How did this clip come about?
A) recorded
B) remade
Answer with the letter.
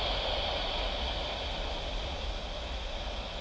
A